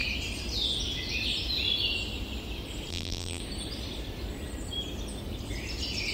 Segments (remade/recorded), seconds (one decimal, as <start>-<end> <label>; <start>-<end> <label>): 0.0-2.9 recorded; 2.9-3.4 remade; 3.4-6.1 recorded